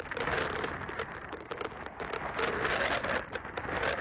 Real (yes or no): yes